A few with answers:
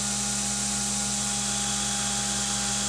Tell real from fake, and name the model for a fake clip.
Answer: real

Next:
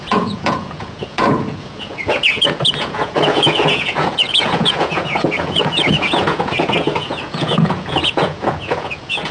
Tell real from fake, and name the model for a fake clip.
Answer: fake, vocoder, Vocos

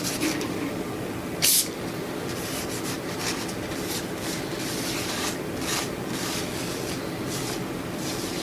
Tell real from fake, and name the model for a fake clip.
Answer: fake, vocoder, BigVGAN v2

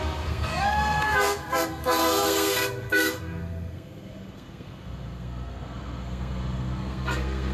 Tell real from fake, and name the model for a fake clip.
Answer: fake, codec, SNAC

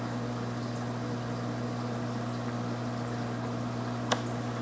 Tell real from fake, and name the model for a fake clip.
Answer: real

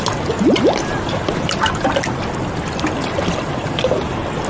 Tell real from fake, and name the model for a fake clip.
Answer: real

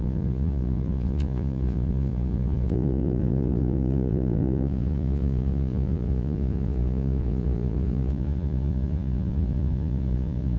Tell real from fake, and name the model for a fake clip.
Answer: fake, vocoder, Vocos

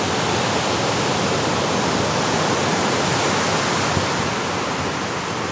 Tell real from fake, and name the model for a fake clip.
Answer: real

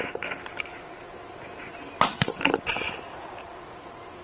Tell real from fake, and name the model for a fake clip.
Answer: real